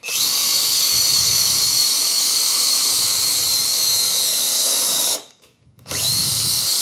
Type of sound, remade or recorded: remade